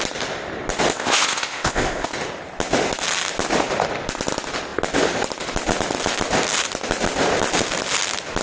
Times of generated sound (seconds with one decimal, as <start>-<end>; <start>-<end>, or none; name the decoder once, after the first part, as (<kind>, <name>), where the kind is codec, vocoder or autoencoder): 0.9-2.1 (codec, ZipCodec)

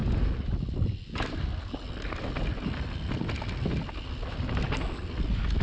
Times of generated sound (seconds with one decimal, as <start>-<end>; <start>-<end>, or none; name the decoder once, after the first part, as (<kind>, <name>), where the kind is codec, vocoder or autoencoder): none